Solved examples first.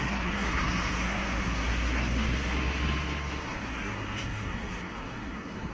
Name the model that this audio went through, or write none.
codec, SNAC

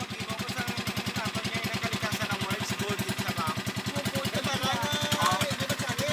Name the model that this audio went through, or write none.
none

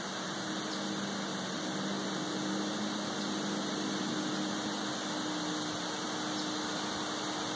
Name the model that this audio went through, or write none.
none